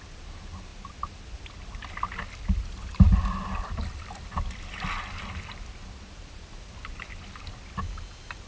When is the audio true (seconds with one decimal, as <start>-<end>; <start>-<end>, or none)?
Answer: 0.0-8.5